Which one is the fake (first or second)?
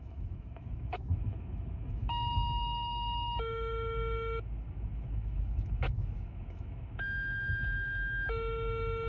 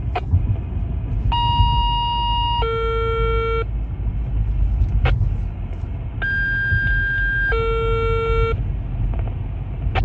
first